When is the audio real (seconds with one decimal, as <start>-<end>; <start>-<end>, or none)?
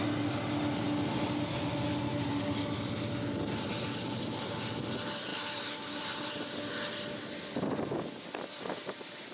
0.0-5.3; 6.3-9.3